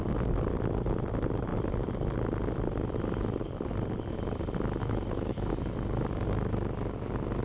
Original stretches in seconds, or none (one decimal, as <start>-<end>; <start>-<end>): 0.0-4.8; 5.5-7.4